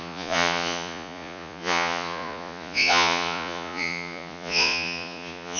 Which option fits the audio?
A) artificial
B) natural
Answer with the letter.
A